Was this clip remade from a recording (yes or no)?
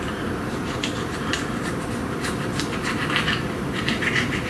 yes